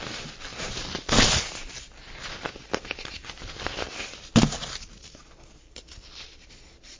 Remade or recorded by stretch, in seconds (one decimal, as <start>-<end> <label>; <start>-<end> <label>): 0.0-3.2 remade; 3.2-6.5 recorded; 6.5-7.0 remade